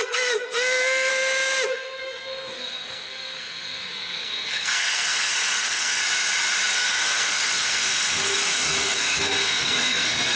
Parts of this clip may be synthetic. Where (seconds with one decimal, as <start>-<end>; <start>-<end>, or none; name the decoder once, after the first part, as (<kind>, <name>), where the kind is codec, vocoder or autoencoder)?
0.0-1.1 (codec, SNAC); 1.7-6.0; 6.7-10.4